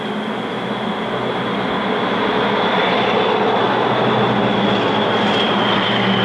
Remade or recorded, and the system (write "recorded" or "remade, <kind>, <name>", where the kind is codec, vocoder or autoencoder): recorded